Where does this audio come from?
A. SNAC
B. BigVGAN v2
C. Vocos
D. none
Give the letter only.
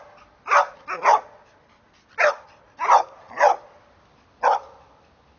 D